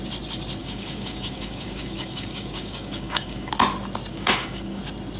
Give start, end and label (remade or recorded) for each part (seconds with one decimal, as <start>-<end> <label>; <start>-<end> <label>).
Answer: 0.0-0.6 recorded; 0.6-3.5 remade; 3.5-4.1 recorded; 4.1-4.8 remade; 4.8-5.2 recorded